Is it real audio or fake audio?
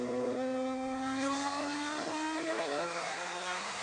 fake